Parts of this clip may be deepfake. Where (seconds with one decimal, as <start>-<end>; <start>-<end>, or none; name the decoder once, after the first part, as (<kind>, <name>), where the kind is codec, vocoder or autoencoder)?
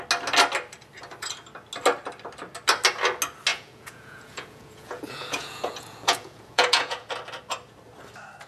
3.5-7.1 (vocoder, Vocos)